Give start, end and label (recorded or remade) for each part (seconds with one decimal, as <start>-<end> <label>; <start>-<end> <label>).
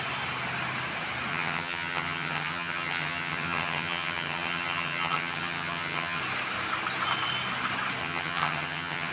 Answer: 0.0-1.3 recorded; 1.3-6.2 remade; 6.2-8.0 recorded; 8.0-9.1 remade